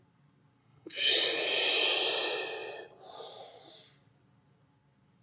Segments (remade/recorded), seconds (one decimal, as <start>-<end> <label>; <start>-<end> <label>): 0.0-0.6 recorded; 0.6-1.1 remade; 1.1-5.2 recorded